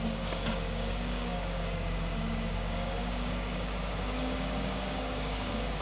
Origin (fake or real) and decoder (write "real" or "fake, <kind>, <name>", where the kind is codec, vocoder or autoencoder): fake, codec, DAC